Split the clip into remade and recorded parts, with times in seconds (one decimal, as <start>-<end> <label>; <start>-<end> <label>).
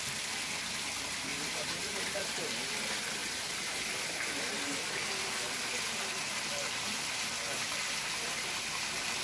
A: 0.0-1.3 recorded; 1.3-2.5 remade; 2.5-3.2 recorded; 3.2-3.8 remade; 3.8-9.2 recorded